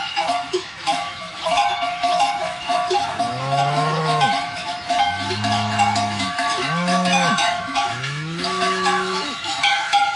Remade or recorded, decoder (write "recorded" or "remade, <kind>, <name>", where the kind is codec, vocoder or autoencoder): remade, autoencoder, DAC-VAE